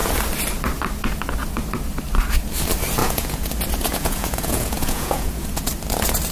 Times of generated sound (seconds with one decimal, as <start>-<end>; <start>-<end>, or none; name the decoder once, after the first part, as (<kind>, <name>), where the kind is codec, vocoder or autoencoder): 3.0-3.5 (vocoder, Vocos); 3.9-5.7

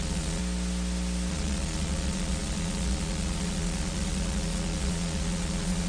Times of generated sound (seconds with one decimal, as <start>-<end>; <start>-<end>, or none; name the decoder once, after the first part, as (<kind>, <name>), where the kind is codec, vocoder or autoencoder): 0.0-0.4 (vocoder, Vocos); 1.3-5.9